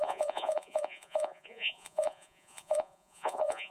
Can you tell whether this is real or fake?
fake